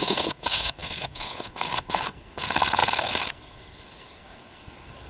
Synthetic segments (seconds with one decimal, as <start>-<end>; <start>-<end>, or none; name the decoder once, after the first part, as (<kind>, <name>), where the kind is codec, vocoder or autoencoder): 0.0-5.1 (codec, SNAC)